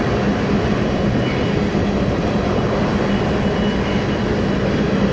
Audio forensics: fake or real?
real